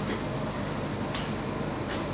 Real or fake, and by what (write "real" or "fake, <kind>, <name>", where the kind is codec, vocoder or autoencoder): real